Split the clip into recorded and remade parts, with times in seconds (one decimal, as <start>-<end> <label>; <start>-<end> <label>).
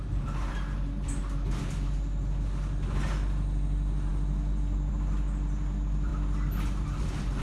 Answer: 0.0-7.4 recorded